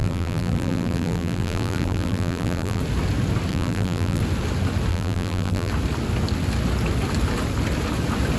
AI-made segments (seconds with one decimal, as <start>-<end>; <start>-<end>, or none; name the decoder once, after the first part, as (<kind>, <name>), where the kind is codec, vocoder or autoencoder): 0.0-2.8 (vocoder, BigVGAN v2); 3.5-4.2; 4.9-5.7